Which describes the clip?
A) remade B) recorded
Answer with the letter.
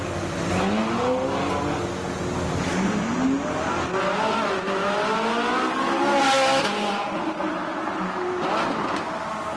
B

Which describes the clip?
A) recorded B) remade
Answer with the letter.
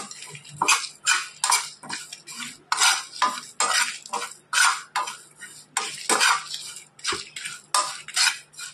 A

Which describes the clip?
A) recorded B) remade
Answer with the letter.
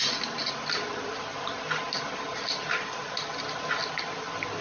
A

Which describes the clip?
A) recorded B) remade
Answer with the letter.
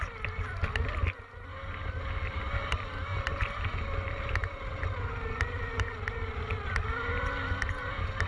A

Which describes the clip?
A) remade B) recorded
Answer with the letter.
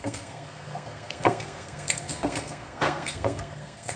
A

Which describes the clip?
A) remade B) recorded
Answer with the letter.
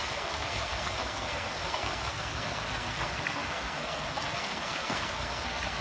A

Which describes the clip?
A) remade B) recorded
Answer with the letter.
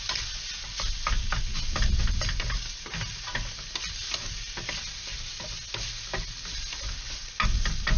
B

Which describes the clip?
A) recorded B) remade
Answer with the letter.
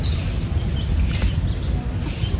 A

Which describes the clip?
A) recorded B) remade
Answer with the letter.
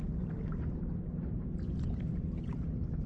A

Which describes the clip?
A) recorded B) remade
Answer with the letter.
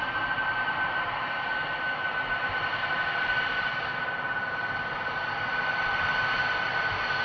A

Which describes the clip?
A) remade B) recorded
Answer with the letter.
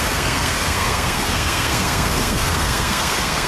A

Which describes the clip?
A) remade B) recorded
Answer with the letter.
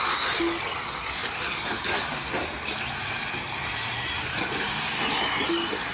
B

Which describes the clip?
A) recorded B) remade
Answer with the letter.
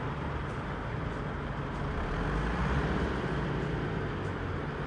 A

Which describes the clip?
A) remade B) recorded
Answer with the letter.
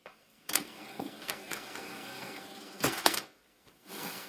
A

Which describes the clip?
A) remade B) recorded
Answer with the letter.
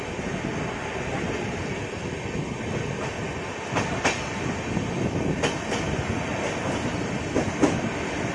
B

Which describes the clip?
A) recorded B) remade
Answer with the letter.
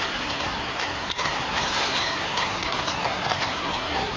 B